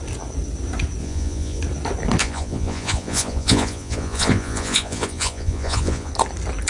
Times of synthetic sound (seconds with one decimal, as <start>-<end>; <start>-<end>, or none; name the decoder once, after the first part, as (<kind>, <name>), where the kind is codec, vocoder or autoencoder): 1.0-1.6 (vocoder, Vocos); 2.2-6.1